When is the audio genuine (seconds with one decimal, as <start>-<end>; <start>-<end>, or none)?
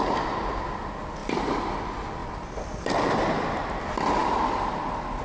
0.0-1.2; 1.8-2.2; 3.5-4.2